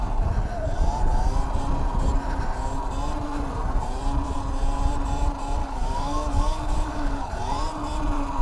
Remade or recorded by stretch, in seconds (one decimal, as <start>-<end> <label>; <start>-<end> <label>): 0.0-5.6 recorded; 5.6-7.3 remade; 7.3-8.4 recorded